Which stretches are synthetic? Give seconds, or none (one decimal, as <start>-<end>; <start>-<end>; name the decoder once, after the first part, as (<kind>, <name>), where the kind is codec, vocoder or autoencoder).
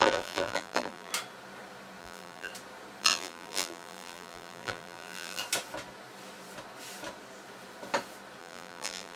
0.0-1.1 (vocoder, BigVGAN v2); 2.0-2.5; 3.0-5.4; 8.4-9.2